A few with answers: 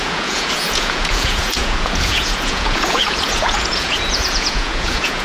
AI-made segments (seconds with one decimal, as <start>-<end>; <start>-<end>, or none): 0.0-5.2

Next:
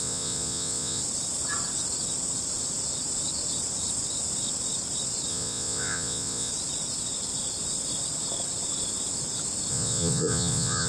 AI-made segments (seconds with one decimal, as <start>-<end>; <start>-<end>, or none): 0.0-1.0; 5.3-6.5; 9.7-10.9

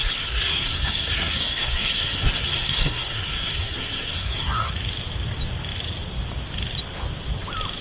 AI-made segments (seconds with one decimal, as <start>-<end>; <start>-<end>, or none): 0.0-4.7

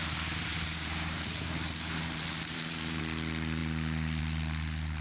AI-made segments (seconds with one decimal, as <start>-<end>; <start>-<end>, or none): 0.0-3.0

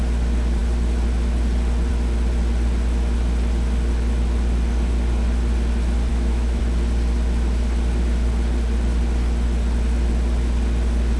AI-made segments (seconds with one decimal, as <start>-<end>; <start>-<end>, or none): 6.1-6.6

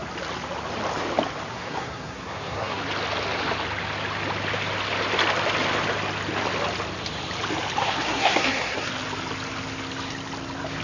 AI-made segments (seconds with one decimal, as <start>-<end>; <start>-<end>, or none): 1.5-2.8; 7.8-8.9

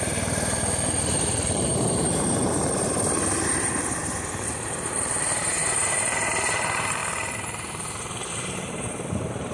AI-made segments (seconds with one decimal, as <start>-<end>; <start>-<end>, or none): 0.0-7.0; 8.3-9.5